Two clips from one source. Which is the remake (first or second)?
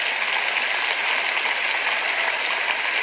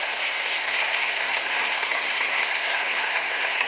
second